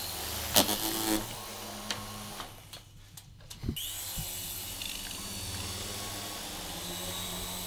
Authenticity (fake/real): real